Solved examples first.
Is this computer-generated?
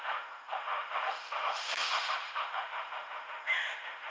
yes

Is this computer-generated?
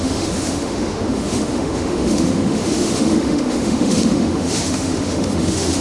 yes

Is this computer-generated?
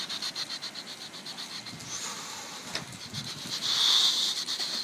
no